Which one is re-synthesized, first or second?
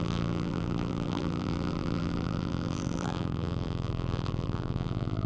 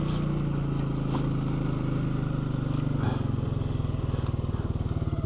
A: first